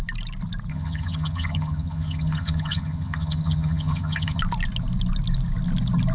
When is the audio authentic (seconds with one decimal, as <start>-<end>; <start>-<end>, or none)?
0.0-0.7; 4.4-6.1